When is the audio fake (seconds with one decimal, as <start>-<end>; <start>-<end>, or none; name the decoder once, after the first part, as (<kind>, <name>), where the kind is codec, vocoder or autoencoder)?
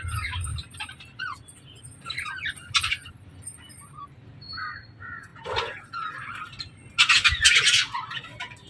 0.5-4.8 (vocoder, BigVGAN v2)